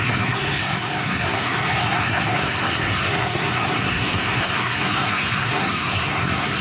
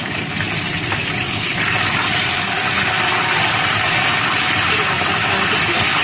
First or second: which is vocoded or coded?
first